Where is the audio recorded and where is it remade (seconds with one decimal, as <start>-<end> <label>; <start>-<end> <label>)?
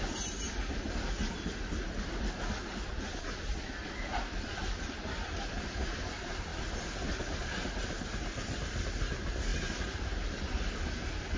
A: 0.0-11.4 recorded